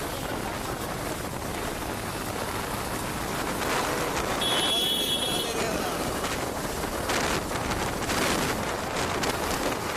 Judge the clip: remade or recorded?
recorded